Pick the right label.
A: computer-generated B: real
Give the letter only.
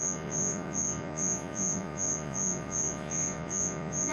A